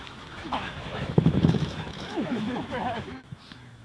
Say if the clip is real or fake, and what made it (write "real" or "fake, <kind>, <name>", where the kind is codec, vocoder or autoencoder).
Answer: fake, autoencoder, DAC-VAE